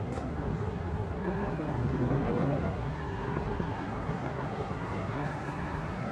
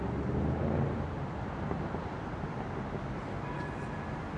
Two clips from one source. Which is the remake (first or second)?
first